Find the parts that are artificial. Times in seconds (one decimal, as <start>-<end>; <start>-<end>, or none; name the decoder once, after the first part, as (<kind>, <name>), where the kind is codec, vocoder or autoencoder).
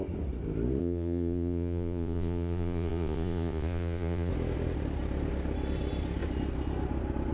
0.8-4.3 (vocoder, Vocos)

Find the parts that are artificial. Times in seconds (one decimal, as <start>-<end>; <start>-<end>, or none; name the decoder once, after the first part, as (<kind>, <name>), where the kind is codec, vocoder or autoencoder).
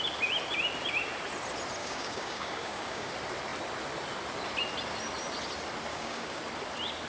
1.8-3.1 (codec, DAC); 5.9-6.4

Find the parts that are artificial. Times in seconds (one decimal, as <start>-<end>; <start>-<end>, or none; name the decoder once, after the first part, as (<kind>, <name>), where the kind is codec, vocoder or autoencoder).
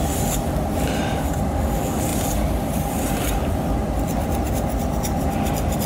none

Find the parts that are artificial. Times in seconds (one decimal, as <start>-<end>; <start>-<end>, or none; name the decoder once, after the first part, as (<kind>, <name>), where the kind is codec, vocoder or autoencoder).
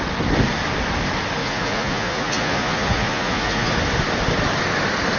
1.4-3.7 (vocoder, Vocos)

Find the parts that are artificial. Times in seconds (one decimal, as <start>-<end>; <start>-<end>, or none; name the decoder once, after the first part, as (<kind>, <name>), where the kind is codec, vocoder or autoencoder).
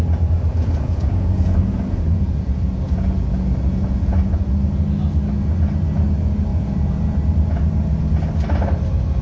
0.5-4.5 (vocoder, Vocos); 6.5-7.2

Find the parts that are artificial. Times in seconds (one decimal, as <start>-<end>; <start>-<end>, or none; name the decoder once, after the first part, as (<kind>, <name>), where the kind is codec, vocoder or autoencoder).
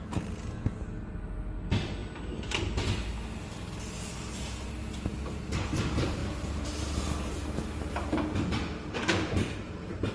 6.2-10.1 (vocoder, BigVGAN v2)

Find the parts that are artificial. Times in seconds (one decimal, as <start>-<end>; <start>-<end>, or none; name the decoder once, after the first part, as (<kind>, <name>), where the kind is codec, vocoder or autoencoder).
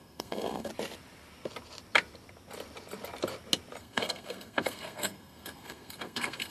0.0-0.7 (codec, SNAC); 3.8-6.5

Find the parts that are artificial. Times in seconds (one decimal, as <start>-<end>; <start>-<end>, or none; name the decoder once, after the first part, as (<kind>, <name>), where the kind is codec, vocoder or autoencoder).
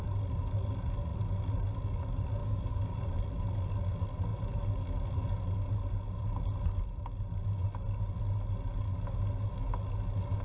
2.4-3.1 (codec, DAC)